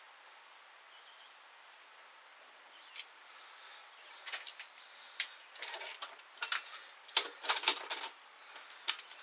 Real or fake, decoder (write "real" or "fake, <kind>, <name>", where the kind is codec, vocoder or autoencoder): real